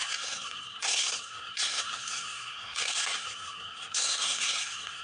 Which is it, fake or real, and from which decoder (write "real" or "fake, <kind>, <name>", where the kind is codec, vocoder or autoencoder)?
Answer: fake, codec, SNAC